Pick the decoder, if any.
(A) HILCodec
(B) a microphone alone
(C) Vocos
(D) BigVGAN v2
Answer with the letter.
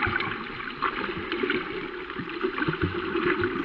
B